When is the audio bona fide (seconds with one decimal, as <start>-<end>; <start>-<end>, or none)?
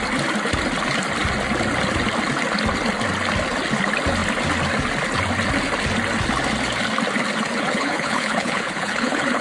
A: 0.0-7.6